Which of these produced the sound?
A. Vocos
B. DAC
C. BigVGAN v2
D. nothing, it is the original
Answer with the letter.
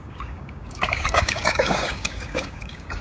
B